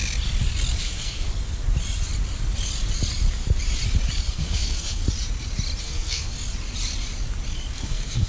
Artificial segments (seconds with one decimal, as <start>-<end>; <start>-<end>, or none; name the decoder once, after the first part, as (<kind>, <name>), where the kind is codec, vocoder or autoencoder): 0.8-1.3 (codec, SNAC); 4.3-5.0; 5.8-6.3; 7.7-8.3